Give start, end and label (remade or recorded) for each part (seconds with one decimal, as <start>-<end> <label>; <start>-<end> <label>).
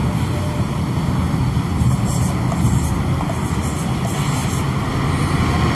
0.0-5.7 recorded